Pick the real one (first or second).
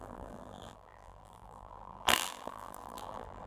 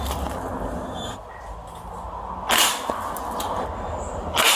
second